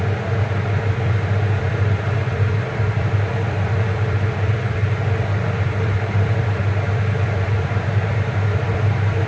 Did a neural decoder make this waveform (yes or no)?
yes